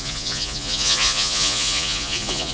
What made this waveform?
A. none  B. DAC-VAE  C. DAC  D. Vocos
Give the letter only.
D